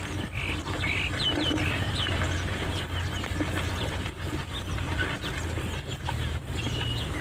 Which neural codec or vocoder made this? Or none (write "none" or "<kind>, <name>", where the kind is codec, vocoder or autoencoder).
none